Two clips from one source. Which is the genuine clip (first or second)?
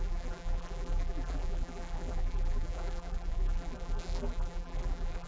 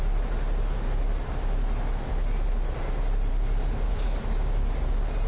second